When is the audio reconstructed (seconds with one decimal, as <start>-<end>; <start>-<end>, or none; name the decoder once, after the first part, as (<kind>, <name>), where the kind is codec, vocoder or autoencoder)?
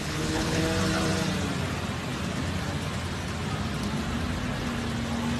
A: 0.0-0.6 (codec, HILCodec)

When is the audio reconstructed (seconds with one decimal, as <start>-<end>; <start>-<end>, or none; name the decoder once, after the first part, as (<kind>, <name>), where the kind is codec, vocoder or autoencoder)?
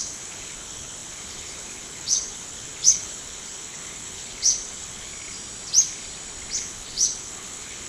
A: 0.0-5.1 (codec, HILCodec); 6.6-7.9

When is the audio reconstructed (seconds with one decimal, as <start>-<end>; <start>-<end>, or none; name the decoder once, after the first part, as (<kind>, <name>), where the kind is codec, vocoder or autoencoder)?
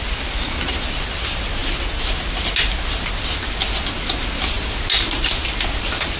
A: none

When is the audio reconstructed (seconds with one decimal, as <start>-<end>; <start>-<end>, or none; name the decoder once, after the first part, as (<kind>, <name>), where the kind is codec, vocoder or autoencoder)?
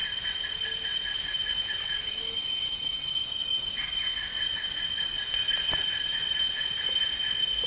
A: none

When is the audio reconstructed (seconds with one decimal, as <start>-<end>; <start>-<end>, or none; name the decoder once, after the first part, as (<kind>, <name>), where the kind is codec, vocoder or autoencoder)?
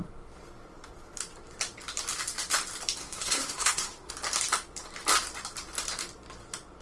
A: 3.0-4.1 (codec, SNAC)